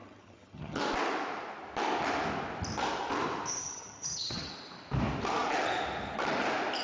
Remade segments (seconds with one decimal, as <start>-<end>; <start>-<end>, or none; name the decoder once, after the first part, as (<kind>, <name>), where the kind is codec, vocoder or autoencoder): 0.0-0.8 (vocoder, HiFi-GAN); 3.6-4.5